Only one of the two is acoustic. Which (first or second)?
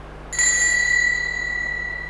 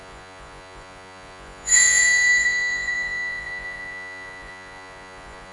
first